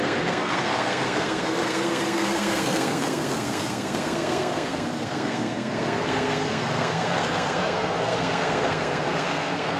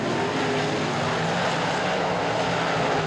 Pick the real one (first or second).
second